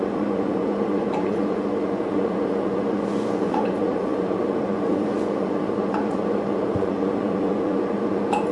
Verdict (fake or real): fake